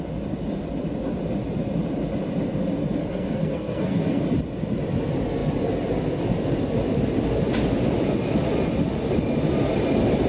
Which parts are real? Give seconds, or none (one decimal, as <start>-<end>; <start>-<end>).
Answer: 0.0-3.0; 4.2-10.3